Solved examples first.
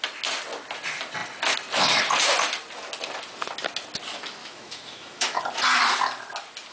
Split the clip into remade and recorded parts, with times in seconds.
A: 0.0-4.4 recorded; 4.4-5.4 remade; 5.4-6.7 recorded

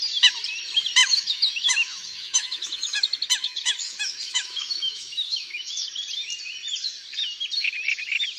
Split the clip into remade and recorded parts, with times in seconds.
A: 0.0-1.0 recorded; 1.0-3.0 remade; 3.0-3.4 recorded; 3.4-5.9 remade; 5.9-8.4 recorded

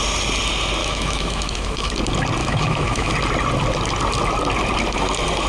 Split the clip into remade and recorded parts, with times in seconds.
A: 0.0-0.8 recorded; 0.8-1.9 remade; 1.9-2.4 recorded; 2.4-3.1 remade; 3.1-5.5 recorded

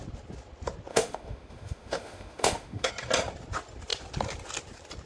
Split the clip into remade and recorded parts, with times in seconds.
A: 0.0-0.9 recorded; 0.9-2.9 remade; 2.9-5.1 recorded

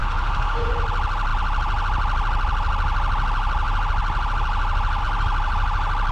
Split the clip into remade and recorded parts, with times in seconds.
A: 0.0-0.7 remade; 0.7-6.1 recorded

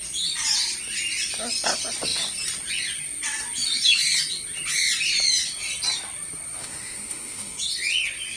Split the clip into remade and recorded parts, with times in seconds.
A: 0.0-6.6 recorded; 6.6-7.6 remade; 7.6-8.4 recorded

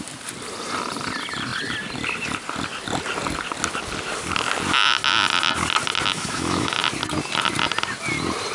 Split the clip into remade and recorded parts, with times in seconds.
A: 0.0-6.1 recorded; 6.1-6.8 remade; 6.8-8.5 recorded

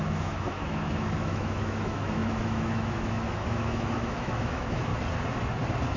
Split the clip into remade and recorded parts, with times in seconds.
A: 0.0-4.9 remade; 4.9-6.0 recorded